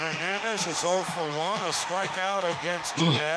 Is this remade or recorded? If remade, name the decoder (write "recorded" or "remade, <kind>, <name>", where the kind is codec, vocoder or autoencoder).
remade, autoencoder, DAC-VAE